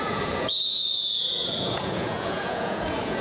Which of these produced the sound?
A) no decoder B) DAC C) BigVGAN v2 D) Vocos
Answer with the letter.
D